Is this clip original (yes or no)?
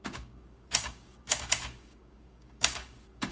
no